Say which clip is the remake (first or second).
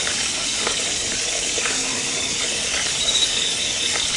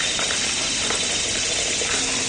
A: first